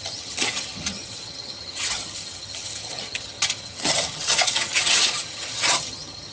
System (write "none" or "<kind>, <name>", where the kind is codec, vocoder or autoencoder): vocoder, HiFi-GAN